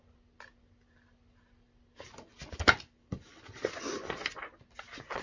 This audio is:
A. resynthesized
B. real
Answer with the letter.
B